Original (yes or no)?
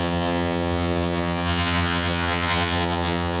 no